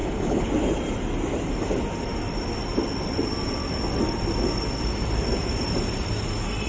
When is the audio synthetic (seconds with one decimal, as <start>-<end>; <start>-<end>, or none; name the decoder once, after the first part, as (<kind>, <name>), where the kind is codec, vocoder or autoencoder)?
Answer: 0.0-0.5 (codec, HILCodec)